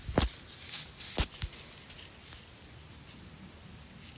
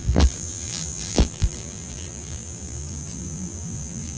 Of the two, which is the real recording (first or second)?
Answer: first